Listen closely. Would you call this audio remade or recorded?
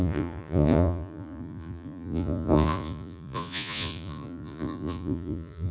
remade